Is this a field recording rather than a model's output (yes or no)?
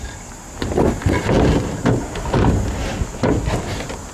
yes